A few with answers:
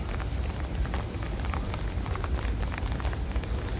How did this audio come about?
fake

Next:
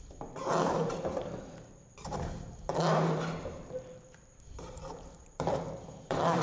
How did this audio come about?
fake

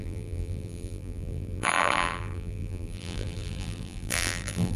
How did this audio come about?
fake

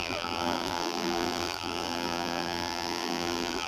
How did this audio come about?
fake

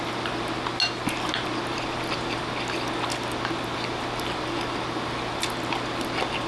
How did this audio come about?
real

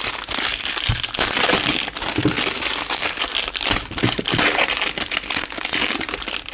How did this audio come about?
real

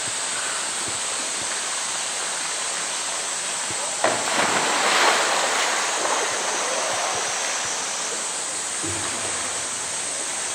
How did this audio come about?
real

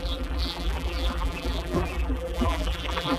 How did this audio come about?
fake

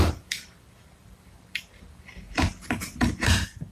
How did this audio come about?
fake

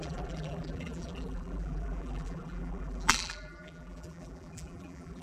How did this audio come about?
fake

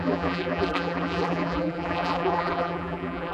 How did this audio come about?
fake